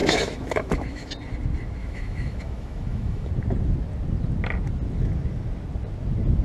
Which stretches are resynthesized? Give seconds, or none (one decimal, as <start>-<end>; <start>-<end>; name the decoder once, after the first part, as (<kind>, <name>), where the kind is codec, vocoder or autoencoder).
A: 0.0-1.1 (autoencoder, DAC-VAE); 1.8-3.3